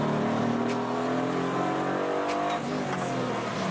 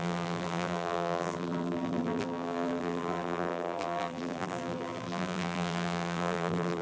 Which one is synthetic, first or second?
second